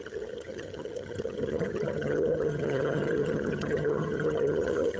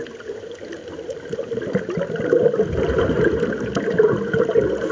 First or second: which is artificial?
first